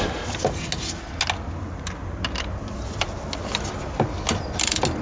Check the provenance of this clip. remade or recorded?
recorded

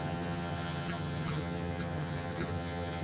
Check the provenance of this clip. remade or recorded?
remade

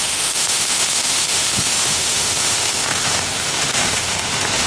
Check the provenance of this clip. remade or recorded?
remade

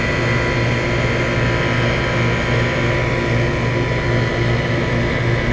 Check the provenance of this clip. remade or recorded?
recorded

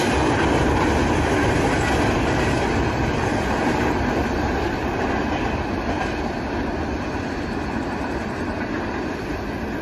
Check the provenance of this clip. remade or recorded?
recorded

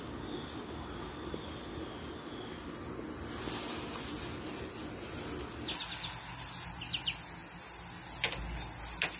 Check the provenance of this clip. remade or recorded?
recorded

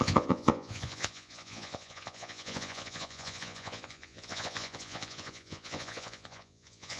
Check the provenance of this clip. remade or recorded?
remade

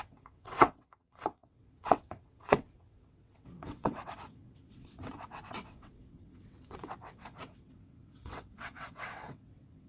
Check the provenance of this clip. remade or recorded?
remade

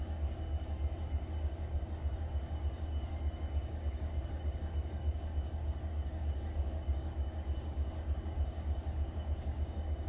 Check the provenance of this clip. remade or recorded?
remade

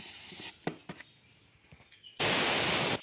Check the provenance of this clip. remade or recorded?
recorded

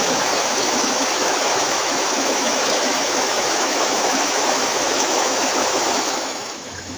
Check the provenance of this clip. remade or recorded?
remade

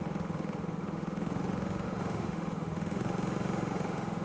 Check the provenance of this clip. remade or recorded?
remade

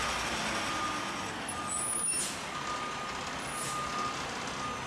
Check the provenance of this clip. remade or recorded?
recorded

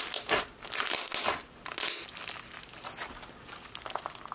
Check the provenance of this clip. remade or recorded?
recorded